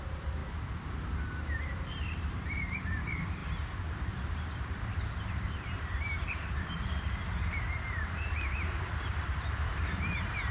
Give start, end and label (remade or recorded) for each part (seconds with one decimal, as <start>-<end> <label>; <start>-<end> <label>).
0.0-0.4 remade; 0.4-1.6 recorded; 1.6-3.4 remade; 3.4-4.3 recorded; 4.3-10.5 remade